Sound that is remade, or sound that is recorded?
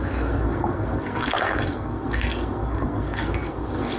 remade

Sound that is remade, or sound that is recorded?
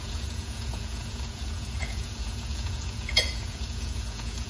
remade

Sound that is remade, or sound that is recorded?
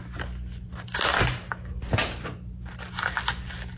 recorded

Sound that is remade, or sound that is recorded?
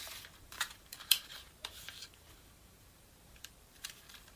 remade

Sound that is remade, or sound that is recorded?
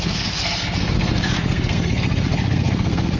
remade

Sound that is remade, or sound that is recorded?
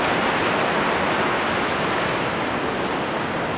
recorded